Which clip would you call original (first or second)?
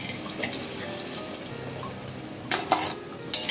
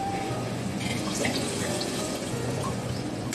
first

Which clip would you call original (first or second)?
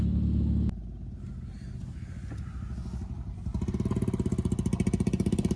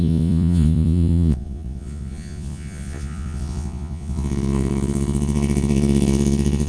first